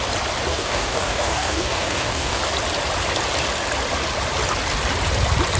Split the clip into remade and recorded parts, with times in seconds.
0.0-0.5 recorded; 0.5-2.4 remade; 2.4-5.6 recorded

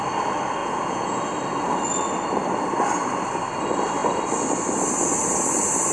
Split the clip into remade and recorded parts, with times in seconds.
0.0-0.6 recorded; 0.6-1.2 remade; 1.2-5.9 recorded

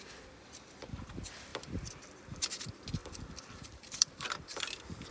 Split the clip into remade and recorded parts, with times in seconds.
0.0-1.5 recorded; 1.5-2.6 remade; 2.6-3.0 recorded; 3.0-4.6 remade; 4.6-5.1 recorded

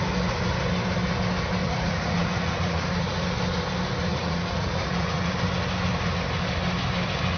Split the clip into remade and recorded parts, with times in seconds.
0.0-1.6 recorded; 1.6-3.2 remade; 3.2-4.1 recorded; 4.1-5.3 remade; 5.3-7.4 recorded

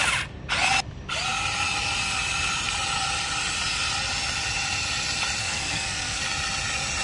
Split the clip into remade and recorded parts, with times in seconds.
0.0-5.4 recorded; 5.4-6.2 remade; 6.2-7.0 recorded